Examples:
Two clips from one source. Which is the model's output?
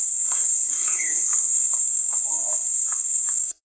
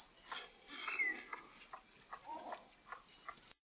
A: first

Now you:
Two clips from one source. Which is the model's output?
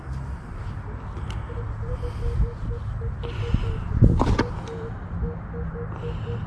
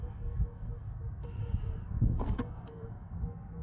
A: second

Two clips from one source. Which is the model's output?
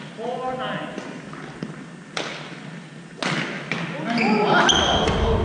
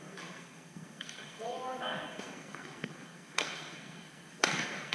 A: second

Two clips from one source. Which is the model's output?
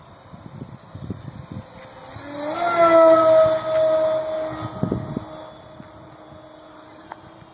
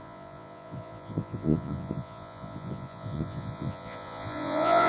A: second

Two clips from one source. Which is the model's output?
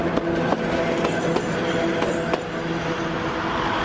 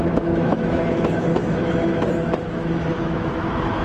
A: second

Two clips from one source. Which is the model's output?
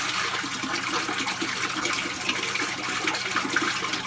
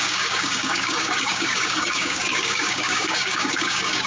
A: second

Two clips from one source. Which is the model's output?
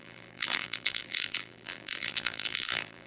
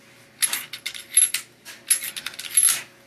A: first